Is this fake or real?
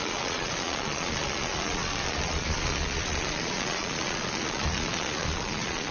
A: fake